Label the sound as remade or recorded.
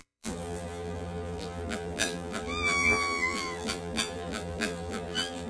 remade